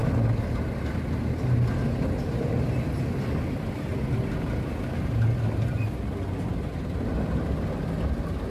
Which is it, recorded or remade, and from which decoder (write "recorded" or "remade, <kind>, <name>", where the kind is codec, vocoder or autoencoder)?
recorded